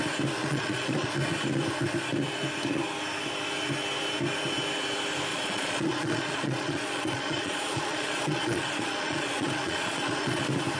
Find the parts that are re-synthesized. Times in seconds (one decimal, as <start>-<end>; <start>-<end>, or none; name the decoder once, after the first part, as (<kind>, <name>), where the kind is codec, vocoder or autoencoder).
0.4-1.1 (vocoder, Vocos); 5.3-10.4